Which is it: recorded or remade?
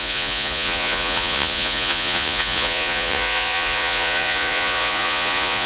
remade